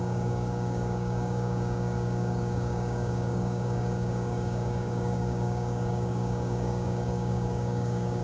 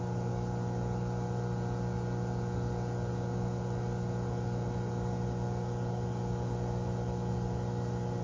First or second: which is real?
second